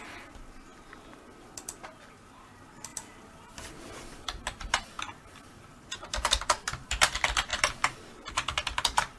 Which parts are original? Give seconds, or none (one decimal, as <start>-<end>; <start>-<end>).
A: 0.0-9.2